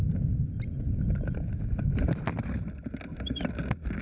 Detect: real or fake real